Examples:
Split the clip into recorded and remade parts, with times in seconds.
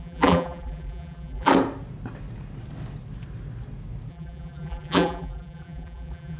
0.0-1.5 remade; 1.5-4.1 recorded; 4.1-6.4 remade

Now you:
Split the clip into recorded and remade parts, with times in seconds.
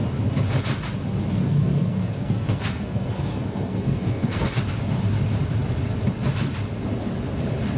0.0-1.4 recorded; 1.4-4.6 remade; 4.6-7.8 recorded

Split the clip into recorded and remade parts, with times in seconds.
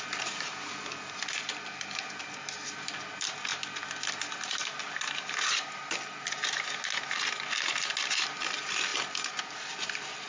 0.0-10.3 recorded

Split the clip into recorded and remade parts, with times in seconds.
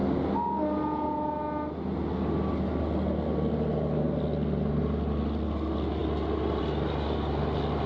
0.0-7.9 recorded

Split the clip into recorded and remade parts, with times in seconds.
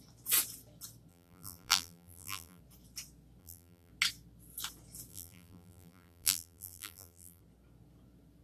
0.0-1.1 recorded; 1.1-2.6 remade; 2.6-3.4 recorded; 3.4-3.9 remade; 3.9-5.1 recorded; 5.1-7.4 remade; 7.4-8.4 recorded